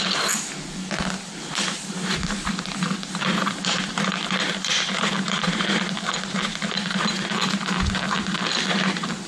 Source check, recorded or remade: remade